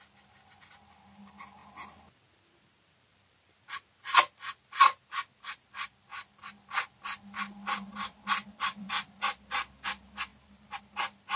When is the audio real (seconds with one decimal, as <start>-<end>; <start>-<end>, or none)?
0.0-10.3; 10.8-11.4